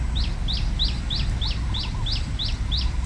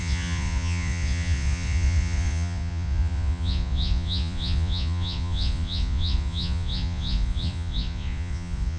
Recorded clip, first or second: first